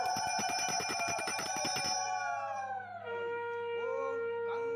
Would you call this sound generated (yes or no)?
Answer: no